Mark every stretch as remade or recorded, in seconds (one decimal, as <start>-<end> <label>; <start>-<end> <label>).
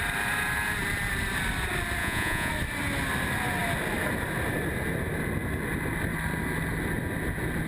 0.0-2.0 recorded; 2.0-2.5 remade; 2.5-7.7 recorded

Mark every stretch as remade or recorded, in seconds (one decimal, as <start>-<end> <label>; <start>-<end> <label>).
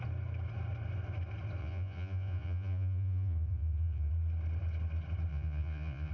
0.0-1.6 recorded; 1.6-4.1 remade; 4.1-5.3 recorded; 5.3-6.1 remade